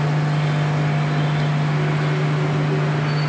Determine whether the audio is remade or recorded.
recorded